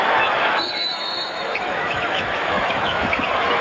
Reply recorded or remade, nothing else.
remade